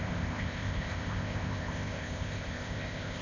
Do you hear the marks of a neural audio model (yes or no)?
yes